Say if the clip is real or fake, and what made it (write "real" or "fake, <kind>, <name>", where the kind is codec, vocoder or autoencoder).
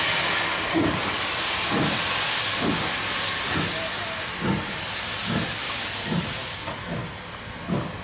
real